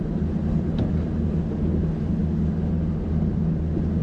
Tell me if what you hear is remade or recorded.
recorded